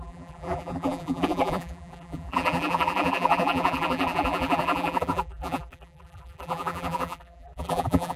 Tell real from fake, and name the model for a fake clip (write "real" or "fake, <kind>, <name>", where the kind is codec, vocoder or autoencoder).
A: fake, vocoder, BigVGAN v2